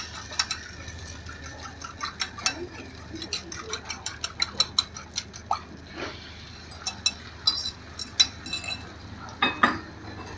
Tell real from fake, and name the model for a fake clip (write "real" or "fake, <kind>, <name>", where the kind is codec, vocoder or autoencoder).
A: real